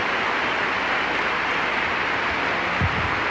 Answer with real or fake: real